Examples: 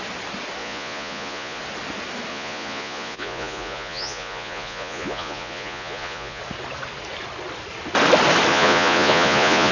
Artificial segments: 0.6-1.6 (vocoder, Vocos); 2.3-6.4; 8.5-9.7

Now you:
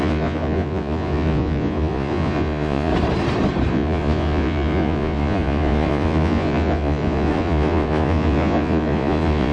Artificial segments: 0.0-2.9 (vocoder, Vocos); 3.7-9.5

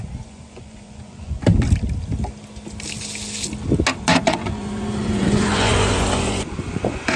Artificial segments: 0.0-1.4 (vocoder, Vocos); 4.0-7.2